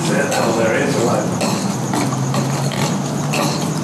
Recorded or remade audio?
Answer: recorded